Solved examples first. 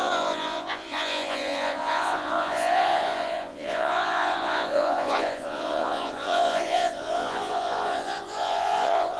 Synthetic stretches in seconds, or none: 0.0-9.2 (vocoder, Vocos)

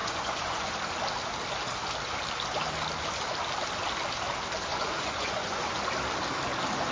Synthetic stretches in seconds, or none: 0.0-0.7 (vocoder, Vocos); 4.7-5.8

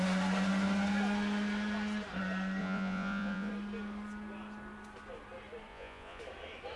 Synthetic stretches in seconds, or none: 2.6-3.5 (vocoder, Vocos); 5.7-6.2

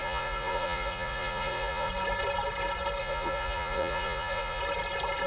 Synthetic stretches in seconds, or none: 0.0-1.9 (vocoder, Vocos); 3.0-4.6